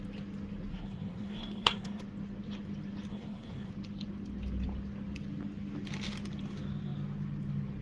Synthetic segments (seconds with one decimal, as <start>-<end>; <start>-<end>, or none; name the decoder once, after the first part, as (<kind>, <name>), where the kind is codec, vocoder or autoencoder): 0.7-2.0 (codec, SNAC); 3.1-3.7